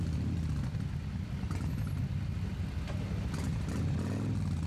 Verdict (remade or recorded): recorded